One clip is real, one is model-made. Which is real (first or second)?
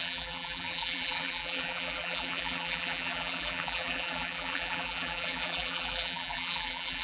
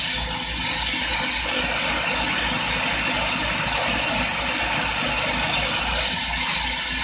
second